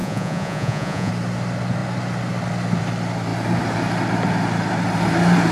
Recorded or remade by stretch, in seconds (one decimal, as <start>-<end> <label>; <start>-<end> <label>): 0.0-1.1 remade; 1.1-5.5 recorded